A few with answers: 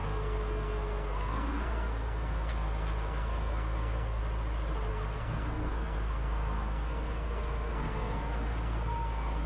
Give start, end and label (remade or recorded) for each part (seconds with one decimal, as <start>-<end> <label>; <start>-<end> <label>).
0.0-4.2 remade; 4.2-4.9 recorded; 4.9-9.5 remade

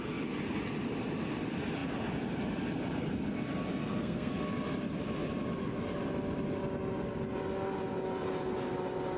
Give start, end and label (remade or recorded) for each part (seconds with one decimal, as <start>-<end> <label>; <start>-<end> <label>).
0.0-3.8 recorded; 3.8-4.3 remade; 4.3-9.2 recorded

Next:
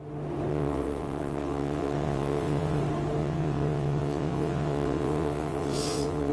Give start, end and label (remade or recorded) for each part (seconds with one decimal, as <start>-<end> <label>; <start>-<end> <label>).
0.0-0.5 recorded; 0.5-2.8 remade; 2.8-3.2 recorded; 3.2-6.3 remade

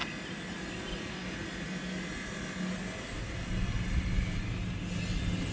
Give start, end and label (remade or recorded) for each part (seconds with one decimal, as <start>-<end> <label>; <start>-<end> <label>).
0.0-5.5 recorded

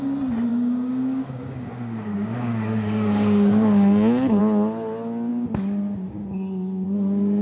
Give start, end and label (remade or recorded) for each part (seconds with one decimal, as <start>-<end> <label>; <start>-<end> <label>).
0.0-0.5 recorded; 0.5-4.4 remade; 4.4-7.4 recorded